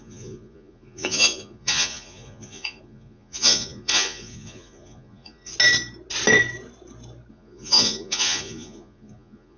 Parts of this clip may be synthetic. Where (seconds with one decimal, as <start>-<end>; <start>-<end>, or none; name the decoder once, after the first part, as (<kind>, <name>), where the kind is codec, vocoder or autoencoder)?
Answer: 0.0-5.5 (vocoder, Vocos); 7.3-9.6